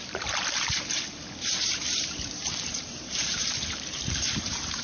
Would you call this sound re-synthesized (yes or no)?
yes